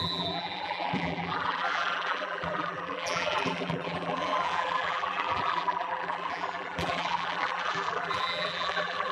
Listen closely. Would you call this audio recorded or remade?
remade